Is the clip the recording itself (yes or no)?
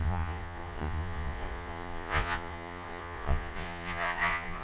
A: no